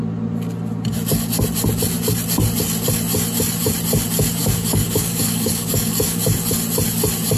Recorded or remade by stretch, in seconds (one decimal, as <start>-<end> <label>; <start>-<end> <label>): 0.0-4.4 recorded; 4.4-6.2 remade; 6.2-7.4 recorded

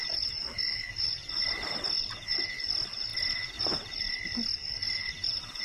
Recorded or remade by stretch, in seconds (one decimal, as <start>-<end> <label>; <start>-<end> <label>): 0.0-5.6 recorded

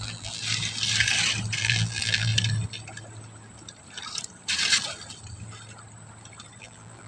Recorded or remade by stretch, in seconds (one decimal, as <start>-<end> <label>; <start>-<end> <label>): 0.0-0.4 remade; 0.4-1.6 recorded; 1.6-2.3 remade; 2.3-6.6 recorded; 6.6-7.1 remade

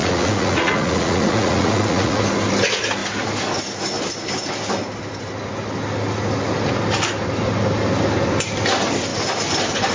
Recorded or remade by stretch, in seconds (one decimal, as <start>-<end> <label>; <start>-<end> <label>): 0.0-2.2 remade; 2.2-9.9 recorded

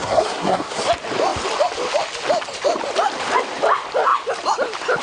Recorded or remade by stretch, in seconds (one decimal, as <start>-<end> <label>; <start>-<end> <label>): 0.0-0.8 remade; 0.8-5.0 recorded

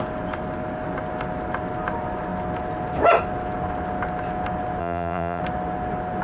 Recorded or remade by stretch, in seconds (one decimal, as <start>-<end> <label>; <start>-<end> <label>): 0.0-4.8 recorded; 4.8-5.4 remade; 5.4-6.2 recorded